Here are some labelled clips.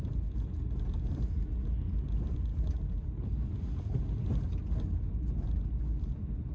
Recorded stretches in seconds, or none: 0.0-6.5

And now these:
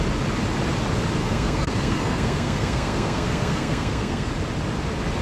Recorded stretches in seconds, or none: 0.0-1.2; 4.3-5.2

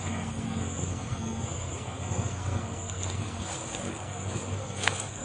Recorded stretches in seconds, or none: none

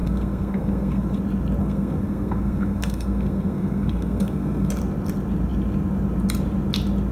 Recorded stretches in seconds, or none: 1.2-1.6; 4.7-7.1

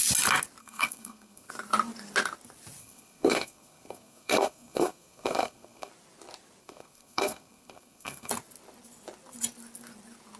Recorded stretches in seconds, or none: 0.0-0.6; 1.5-2.8; 5.9-6.6; 8.3-10.4